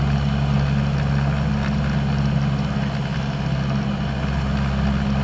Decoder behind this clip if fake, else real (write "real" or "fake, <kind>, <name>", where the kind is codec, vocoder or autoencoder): real